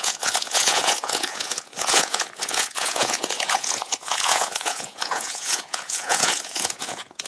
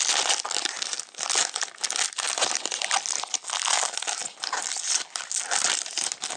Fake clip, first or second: first